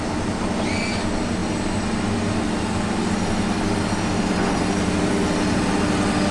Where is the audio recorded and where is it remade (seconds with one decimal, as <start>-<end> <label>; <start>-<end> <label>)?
0.0-6.3 recorded